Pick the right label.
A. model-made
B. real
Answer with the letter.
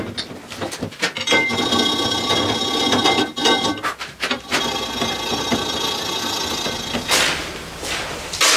B